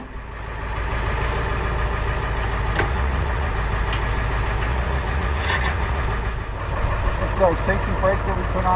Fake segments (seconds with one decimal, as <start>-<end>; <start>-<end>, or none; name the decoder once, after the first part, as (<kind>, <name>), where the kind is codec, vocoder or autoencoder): 2.9-3.5 (vocoder, Vocos); 4.7-6.0